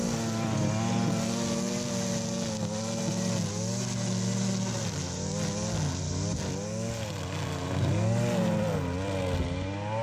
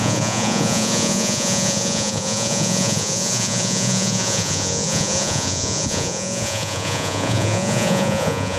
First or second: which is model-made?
second